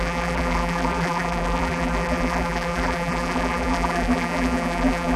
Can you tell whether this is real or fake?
fake